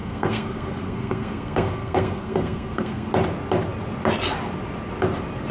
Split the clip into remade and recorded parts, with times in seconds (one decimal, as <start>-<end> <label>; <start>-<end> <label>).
0.0-3.1 remade; 3.1-5.5 recorded